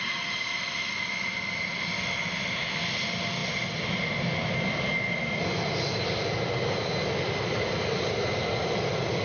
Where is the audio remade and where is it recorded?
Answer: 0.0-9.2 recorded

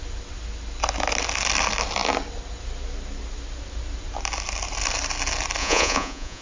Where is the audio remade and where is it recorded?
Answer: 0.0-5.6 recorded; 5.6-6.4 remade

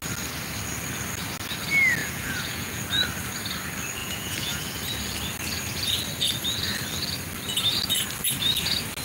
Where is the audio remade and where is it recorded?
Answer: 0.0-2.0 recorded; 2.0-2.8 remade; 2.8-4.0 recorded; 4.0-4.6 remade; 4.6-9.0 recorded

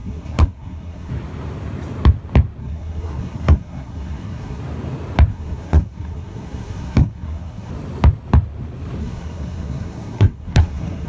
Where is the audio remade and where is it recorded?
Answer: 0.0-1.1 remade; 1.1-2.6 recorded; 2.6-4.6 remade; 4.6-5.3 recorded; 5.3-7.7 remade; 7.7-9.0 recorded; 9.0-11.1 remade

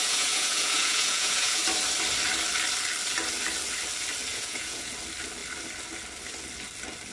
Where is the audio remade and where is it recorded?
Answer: 0.0-1.6 remade; 1.6-4.3 recorded; 4.3-4.9 remade; 4.9-7.1 recorded

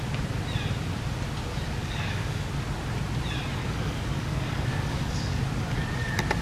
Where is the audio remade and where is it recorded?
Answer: 0.0-1.8 recorded; 1.8-2.5 remade; 2.5-3.6 recorded; 3.6-5.4 remade; 5.4-6.4 recorded